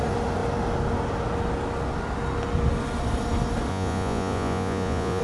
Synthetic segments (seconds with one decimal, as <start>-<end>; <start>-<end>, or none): 3.7-5.2